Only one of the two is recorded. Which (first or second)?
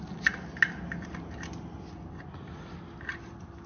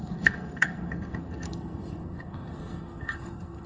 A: first